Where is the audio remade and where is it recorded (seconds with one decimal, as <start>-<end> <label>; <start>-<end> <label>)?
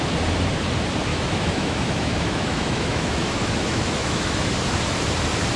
0.0-1.1 recorded; 1.1-4.5 remade; 4.5-5.6 recorded